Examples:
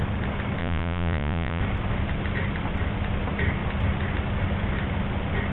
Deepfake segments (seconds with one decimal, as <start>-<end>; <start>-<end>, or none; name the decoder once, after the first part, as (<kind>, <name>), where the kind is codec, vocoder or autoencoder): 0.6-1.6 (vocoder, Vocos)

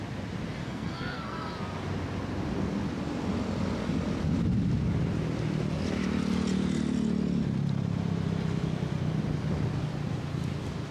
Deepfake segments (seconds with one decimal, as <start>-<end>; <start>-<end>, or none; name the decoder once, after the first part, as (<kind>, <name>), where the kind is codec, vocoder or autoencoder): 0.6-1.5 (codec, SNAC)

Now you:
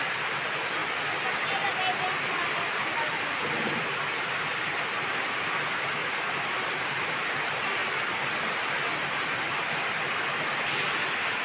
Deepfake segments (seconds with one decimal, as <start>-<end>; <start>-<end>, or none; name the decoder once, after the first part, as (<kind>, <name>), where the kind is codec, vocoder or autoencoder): 6.0-7.3 (vocoder, BigVGAN v2)